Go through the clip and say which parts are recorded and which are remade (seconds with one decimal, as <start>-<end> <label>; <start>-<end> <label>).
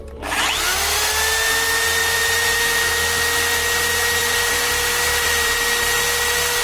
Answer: 0.0-0.5 remade; 0.5-2.0 recorded; 2.0-2.9 remade; 2.9-4.2 recorded; 4.2-5.6 remade; 5.6-6.6 recorded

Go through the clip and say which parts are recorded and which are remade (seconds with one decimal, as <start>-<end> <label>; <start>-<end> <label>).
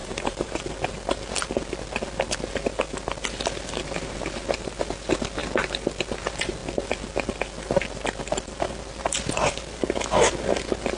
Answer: 0.0-0.6 remade; 0.6-11.0 recorded